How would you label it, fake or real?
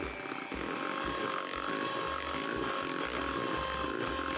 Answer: real